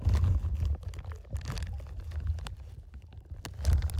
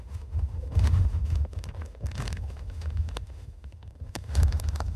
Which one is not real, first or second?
second